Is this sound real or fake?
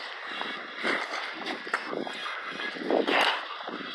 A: real